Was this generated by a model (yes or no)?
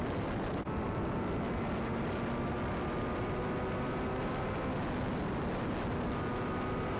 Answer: no